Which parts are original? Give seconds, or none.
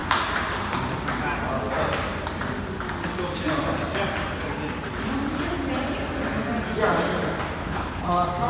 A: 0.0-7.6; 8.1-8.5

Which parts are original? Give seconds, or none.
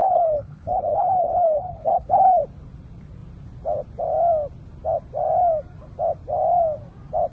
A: 2.4-7.3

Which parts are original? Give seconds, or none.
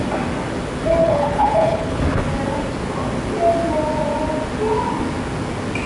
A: 0.0-1.0; 2.0-5.9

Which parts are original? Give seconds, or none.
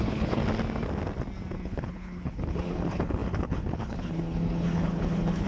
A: 0.4-1.6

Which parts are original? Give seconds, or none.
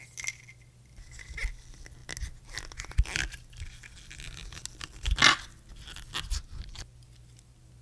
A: 0.0-7.8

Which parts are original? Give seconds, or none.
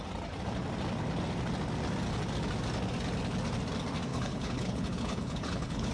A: 0.0-4.1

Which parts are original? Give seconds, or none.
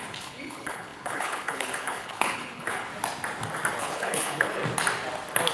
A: 2.9-3.8; 4.6-5.5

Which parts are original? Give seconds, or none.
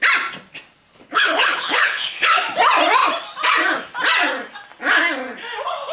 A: 0.0-0.9; 2.4-5.9